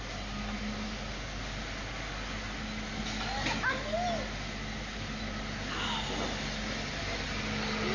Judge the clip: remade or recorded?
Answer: recorded